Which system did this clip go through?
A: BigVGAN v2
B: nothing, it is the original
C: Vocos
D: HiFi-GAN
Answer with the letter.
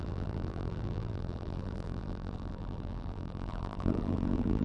A